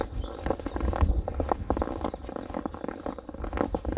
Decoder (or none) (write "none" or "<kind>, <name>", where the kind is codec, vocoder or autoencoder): none